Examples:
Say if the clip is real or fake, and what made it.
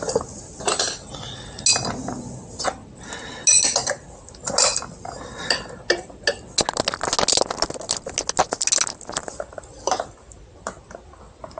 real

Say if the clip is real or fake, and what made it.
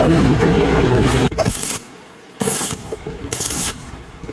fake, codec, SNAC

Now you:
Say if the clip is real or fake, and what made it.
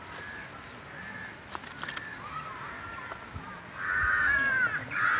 real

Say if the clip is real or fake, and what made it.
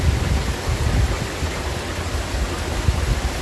real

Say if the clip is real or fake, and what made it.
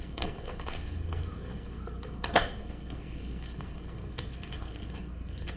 fake, codec, SNAC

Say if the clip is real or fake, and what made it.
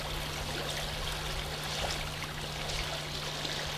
real